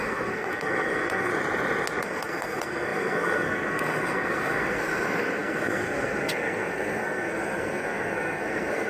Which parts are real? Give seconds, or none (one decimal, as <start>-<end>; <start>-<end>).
1.3-2.0